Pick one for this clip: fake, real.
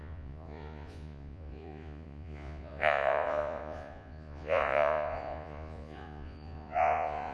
fake